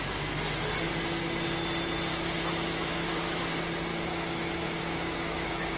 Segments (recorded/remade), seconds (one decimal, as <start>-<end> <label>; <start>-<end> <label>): 0.0-2.1 recorded; 2.1-3.4 remade; 3.4-3.9 recorded; 3.9-5.8 remade